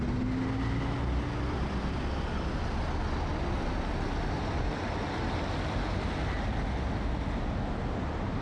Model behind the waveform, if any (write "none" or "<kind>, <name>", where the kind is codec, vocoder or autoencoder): none